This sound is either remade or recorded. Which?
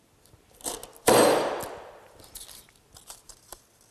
recorded